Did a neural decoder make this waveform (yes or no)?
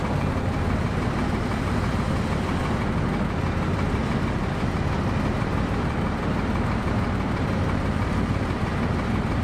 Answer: yes